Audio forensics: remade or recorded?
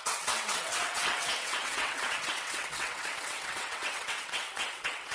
remade